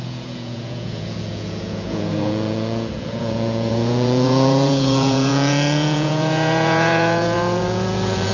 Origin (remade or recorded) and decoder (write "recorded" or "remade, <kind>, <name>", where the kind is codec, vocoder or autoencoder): remade, vocoder, Vocos